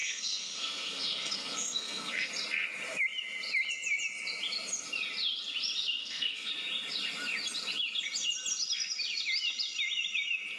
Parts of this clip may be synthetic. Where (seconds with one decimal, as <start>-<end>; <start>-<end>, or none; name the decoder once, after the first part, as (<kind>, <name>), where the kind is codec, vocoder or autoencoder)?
0.0-2.3 (codec, SNAC); 6.0-6.5